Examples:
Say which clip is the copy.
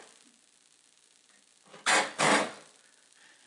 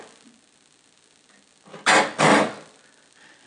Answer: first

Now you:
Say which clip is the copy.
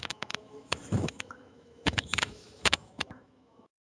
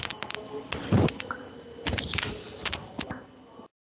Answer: first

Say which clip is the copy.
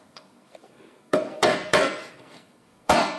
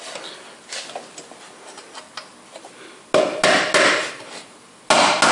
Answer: first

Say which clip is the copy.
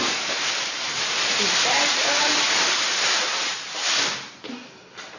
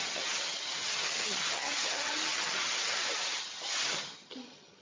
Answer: second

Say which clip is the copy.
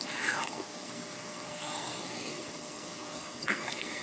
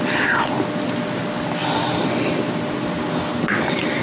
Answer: first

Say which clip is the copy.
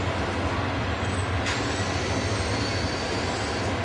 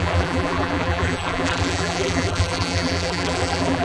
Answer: second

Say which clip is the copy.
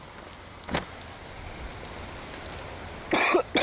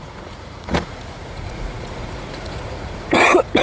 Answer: second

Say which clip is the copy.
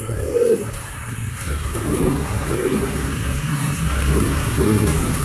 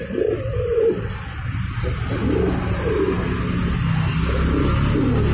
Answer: first